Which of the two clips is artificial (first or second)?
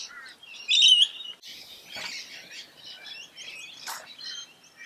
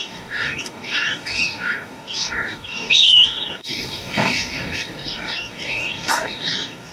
second